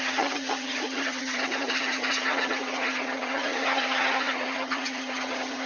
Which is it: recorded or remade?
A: remade